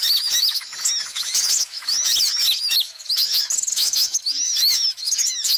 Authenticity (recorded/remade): remade